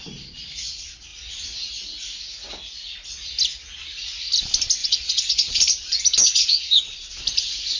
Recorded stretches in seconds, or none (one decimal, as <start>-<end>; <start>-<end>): 0.0-4.8; 5.6-6.2; 7.1-7.8